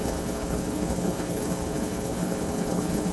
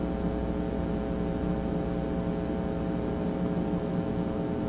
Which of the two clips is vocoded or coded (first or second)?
first